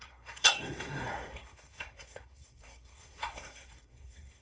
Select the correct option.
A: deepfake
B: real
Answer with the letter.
A